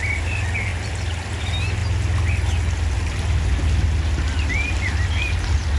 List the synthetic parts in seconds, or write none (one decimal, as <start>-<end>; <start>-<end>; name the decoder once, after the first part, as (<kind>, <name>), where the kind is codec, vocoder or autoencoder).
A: none